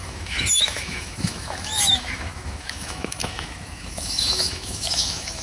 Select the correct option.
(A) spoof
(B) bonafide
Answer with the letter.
A